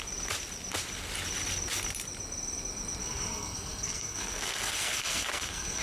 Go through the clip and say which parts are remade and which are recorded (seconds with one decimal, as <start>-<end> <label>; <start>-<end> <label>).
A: 0.0-3.0 recorded; 3.0-5.8 remade